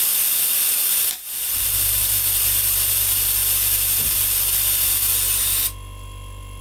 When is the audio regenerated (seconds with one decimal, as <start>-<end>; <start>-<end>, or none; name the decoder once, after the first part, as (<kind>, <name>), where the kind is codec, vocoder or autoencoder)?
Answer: none